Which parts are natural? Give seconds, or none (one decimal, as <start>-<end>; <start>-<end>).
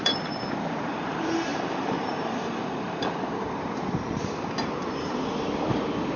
none